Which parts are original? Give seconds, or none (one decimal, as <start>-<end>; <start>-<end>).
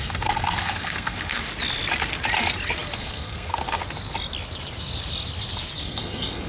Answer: 1.4-3.0; 3.8-5.8